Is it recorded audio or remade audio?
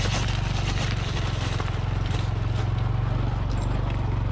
recorded